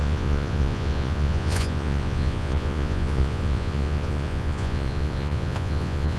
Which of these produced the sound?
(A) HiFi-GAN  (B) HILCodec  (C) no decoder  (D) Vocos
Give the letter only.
D